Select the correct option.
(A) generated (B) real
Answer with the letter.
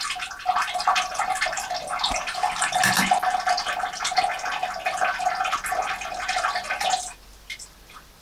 B